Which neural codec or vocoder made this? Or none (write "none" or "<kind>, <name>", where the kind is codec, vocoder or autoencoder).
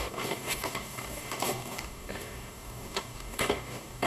codec, DAC